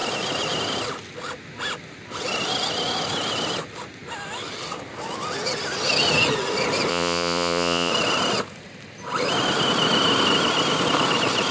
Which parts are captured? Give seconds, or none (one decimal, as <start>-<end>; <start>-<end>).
0.0-6.9; 7.9-11.5